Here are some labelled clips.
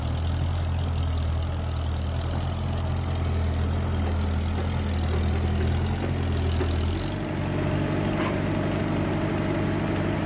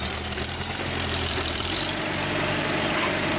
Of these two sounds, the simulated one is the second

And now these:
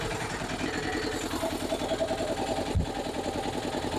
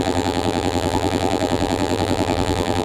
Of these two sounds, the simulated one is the second